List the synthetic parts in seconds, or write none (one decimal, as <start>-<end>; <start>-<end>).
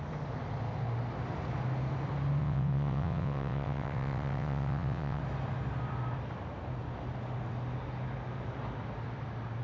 2.4-5.2